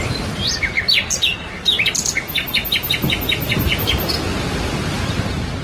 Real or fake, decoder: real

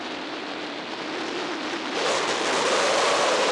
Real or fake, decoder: real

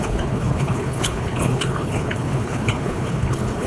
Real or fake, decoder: fake, codec, HILCodec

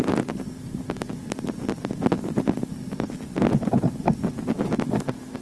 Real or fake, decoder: real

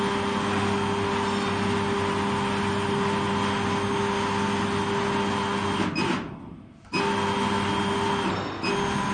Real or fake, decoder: real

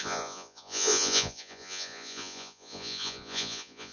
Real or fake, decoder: fake, vocoder, Vocos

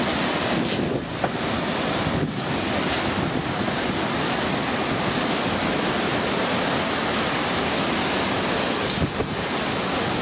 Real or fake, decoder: real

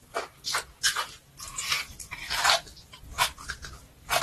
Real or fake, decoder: real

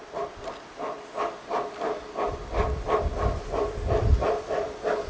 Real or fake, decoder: real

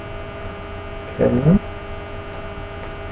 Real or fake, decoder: real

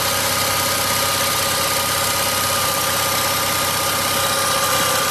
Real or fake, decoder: real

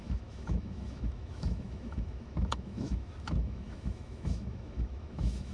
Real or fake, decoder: fake, autoencoder, DAC-VAE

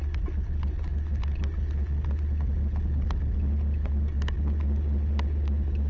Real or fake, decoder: real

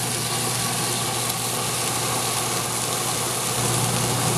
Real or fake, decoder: real